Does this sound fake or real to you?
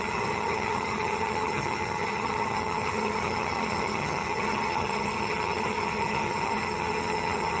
fake